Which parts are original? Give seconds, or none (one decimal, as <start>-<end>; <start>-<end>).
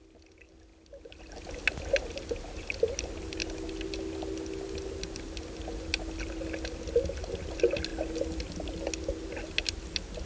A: 0.0-10.3